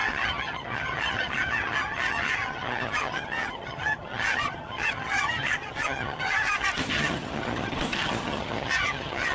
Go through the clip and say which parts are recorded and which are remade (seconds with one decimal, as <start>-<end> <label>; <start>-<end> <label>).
0.0-9.3 remade